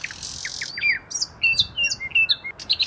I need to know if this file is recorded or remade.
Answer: recorded